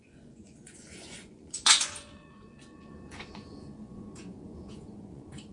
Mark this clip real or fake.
fake